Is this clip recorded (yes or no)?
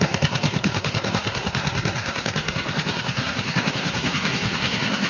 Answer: no